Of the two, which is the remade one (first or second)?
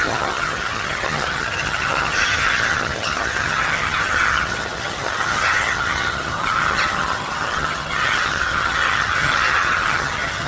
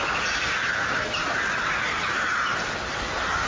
first